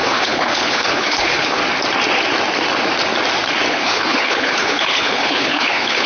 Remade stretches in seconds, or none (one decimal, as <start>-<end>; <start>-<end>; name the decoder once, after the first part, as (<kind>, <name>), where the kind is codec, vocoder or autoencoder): 0.0-1.6 (codec, HILCodec); 3.7-6.1